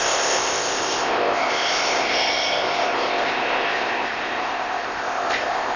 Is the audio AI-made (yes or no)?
yes